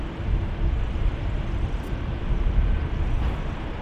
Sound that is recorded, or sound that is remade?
recorded